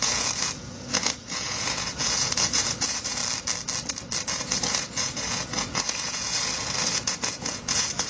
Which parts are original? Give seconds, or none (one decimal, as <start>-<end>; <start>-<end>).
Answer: 3.2-4.3